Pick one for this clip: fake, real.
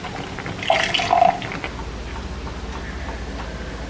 real